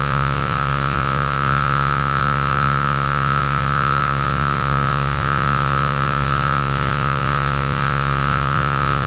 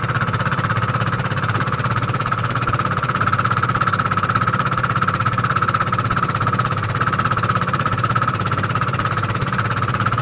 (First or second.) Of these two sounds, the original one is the second